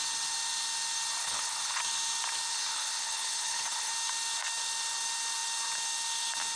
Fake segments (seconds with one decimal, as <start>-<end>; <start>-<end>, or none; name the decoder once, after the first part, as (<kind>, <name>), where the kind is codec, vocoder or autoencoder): 1.2-1.8 (codec, HILCodec); 2.5-3.9